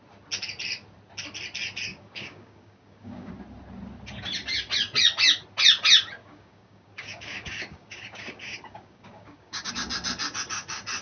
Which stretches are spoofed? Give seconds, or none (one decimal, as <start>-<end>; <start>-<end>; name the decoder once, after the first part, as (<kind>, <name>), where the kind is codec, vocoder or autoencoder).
1.9-3.3 (codec, DAC); 6.2-9.7

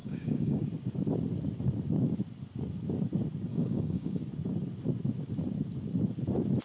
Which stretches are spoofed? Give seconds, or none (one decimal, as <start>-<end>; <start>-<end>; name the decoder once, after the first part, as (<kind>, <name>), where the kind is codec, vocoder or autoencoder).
0.0-0.6 (codec, DAC); 3.5-4.2